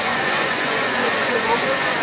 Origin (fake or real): fake